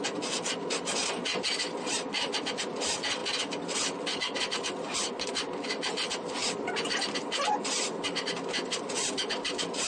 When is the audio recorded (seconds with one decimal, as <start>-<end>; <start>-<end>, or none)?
0.0-9.9